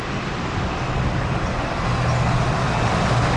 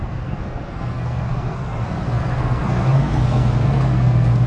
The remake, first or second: second